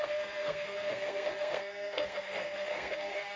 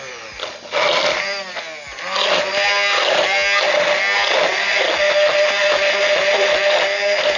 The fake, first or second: first